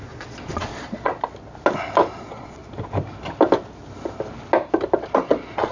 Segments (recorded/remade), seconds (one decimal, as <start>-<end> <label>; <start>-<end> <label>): 0.0-1.1 remade; 1.1-2.2 recorded; 2.2-2.6 remade; 2.6-5.1 recorded; 5.1-5.7 remade